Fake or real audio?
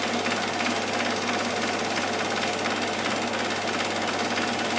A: real